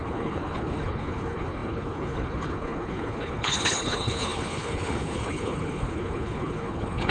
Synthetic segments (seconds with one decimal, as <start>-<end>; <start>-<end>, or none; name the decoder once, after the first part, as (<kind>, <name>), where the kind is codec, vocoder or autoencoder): 0.0-7.1 (codec, HILCodec)